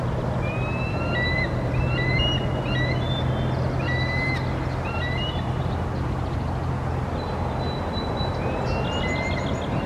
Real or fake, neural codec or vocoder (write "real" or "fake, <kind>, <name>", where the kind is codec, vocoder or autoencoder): real